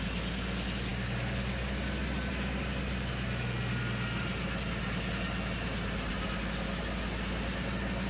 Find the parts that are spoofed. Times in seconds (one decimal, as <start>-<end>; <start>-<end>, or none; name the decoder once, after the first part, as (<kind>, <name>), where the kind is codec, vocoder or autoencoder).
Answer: none